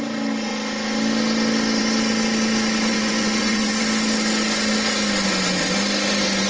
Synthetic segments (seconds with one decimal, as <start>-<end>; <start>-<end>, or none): 2.9-3.8